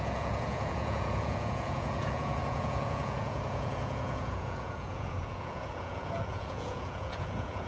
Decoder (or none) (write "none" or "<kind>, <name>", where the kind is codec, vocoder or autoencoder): vocoder, Vocos